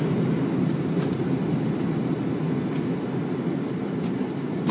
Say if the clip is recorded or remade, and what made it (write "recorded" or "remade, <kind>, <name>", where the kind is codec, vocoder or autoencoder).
recorded